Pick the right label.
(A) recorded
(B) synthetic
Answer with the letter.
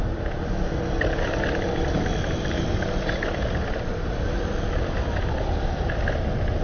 A